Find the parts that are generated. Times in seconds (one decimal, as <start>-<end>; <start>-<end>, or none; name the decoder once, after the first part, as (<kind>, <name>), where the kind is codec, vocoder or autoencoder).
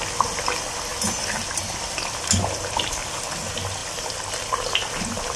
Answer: none